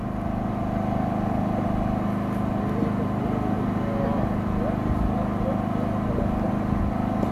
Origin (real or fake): real